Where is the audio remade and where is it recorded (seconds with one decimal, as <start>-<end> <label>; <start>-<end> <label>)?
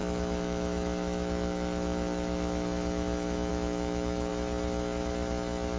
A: 0.0-4.3 remade; 4.3-5.8 recorded